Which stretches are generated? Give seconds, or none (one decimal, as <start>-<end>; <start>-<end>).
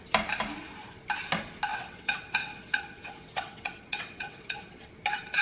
1.7-4.9